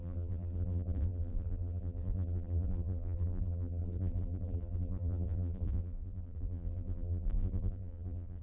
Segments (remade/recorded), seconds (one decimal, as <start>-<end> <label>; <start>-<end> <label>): 0.0-8.4 remade